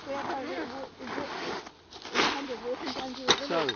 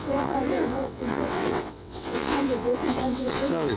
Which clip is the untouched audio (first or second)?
first